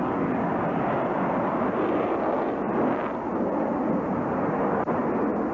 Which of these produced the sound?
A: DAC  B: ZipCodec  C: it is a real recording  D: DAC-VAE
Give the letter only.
C